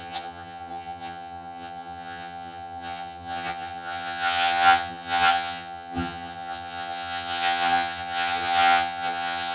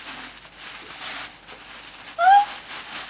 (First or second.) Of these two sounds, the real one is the second